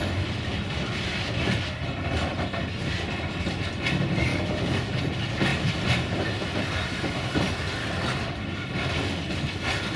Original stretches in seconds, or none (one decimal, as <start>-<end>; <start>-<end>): 0.0-4.3; 5.0-10.0